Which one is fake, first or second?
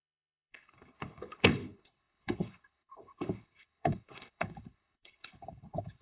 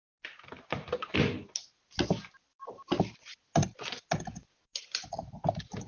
first